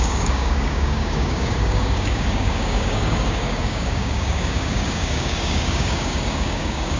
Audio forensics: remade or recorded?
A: remade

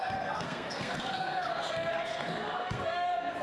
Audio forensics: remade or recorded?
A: remade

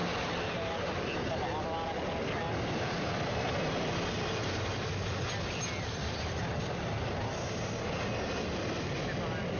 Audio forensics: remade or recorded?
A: recorded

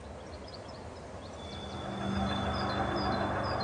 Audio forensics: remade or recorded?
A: recorded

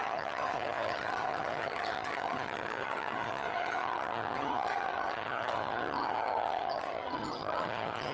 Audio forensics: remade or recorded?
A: remade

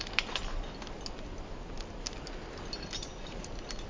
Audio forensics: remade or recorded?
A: recorded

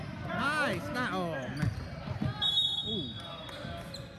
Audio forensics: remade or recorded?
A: recorded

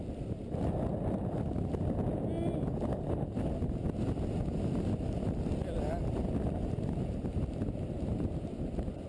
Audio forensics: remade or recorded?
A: recorded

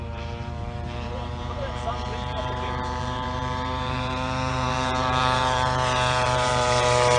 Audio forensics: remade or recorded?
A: remade